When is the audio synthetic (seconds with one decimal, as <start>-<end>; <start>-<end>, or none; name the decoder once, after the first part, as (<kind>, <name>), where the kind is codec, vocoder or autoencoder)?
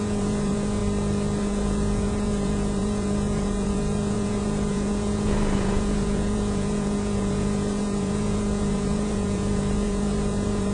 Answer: 0.0-0.8 (vocoder, Vocos); 1.4-10.7